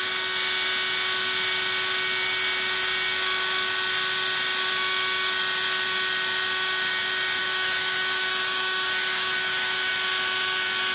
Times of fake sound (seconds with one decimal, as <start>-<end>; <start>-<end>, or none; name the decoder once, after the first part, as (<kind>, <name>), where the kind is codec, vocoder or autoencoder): 7.4-9.9 (autoencoder, DAC-VAE)